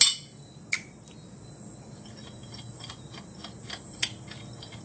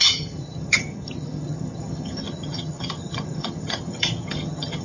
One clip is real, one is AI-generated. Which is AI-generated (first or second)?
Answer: second